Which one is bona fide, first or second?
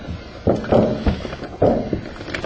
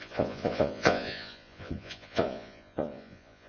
first